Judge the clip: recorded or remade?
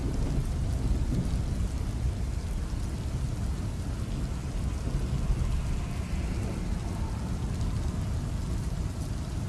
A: recorded